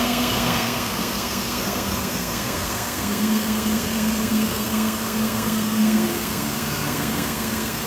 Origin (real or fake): fake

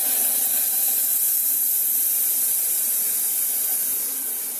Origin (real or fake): real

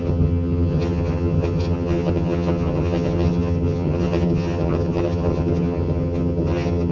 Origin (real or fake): fake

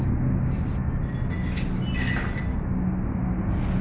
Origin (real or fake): real